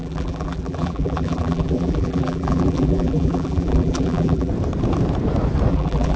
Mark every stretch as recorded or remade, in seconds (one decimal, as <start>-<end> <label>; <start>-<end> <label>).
0.0-4.5 remade; 4.5-5.7 recorded; 5.7-6.2 remade